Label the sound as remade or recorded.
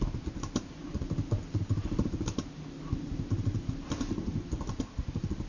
recorded